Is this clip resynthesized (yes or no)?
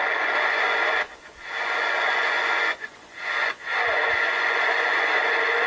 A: yes